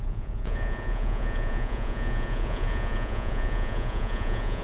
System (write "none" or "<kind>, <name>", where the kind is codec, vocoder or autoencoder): vocoder, Vocos